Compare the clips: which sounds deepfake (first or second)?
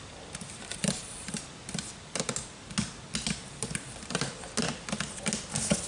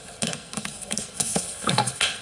second